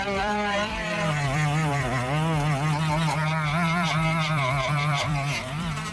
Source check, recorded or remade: remade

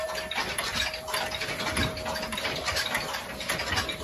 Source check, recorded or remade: remade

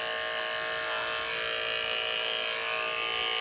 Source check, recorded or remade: recorded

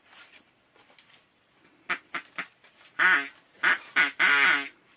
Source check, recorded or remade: recorded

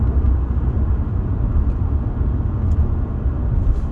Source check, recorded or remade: recorded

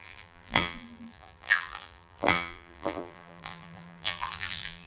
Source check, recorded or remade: remade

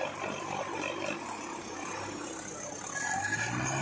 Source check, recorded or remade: recorded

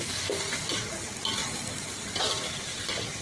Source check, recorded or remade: recorded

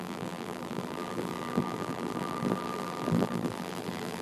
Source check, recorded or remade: remade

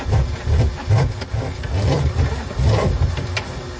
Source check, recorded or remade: recorded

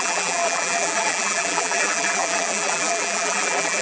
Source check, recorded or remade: remade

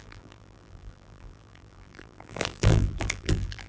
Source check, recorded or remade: remade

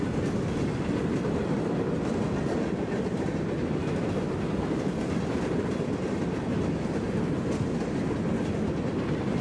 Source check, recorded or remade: recorded